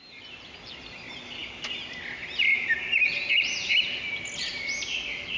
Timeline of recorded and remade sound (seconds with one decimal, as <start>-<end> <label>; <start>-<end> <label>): 0.0-5.4 recorded